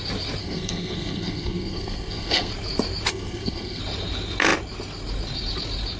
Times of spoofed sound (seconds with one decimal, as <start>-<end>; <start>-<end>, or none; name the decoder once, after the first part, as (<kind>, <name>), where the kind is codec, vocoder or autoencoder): 0.4-2.5 (codec, SNAC); 3.1-3.8